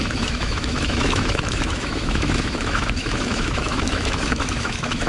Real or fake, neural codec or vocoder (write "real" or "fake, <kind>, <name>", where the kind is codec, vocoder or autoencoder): fake, autoencoder, DAC-VAE